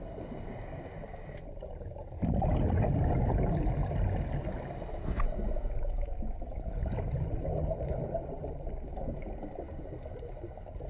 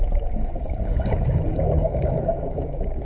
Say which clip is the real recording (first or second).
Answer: first